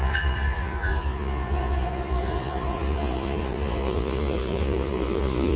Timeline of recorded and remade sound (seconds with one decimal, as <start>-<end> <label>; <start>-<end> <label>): 0.0-5.6 remade